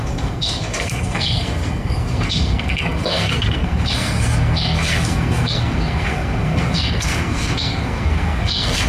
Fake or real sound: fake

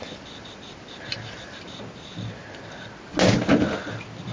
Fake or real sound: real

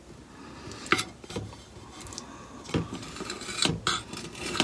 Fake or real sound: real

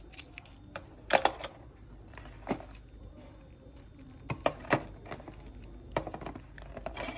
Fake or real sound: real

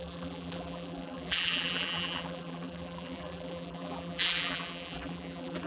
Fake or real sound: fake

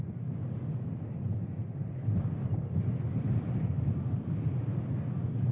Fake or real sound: real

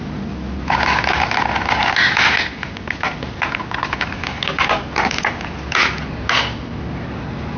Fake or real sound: real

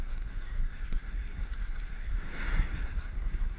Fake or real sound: fake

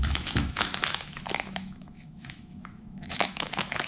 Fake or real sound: fake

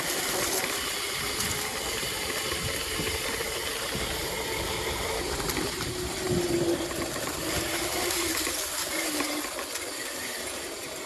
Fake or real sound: real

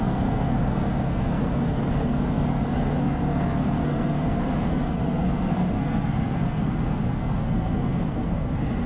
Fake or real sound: fake